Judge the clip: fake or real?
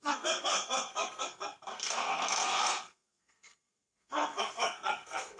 fake